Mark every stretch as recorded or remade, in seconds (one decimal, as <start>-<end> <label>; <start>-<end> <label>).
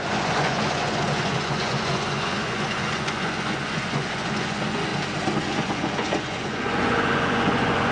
0.0-4.9 remade; 4.9-5.4 recorded; 5.4-7.9 remade